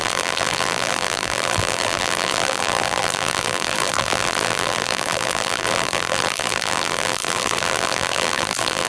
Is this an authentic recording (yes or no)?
no